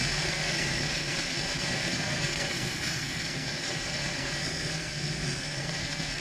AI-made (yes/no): yes